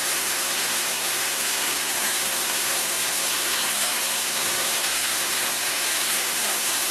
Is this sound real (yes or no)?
no